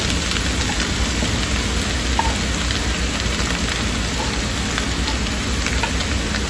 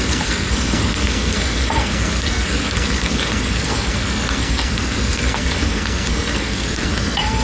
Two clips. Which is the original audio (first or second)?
first